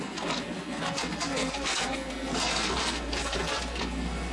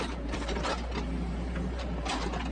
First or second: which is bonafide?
second